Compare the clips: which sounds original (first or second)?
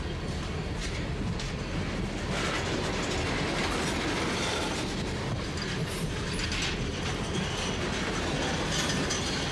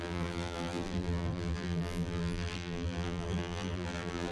first